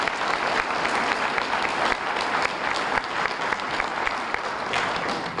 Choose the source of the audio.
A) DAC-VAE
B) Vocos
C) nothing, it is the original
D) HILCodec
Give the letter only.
C